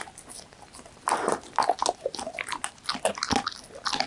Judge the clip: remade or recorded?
recorded